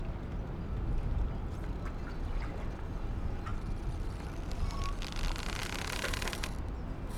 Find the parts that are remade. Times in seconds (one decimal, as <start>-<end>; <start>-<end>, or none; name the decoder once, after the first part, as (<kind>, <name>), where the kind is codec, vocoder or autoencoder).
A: 3.5-4.1 (vocoder, BigVGAN v2); 5.6-6.7

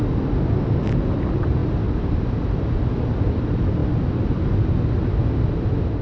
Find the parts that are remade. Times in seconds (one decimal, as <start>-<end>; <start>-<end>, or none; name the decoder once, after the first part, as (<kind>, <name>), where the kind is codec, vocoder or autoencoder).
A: none

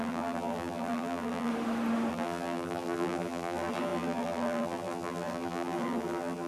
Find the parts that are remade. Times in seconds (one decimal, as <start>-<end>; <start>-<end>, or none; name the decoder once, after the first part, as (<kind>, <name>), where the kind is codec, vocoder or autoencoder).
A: 0.0-1.5 (vocoder, BigVGAN v2); 2.1-6.5

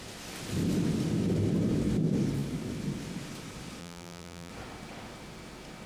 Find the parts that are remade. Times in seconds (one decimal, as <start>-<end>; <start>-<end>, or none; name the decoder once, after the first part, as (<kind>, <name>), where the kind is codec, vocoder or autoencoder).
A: 3.8-4.5 (vocoder, BigVGAN v2)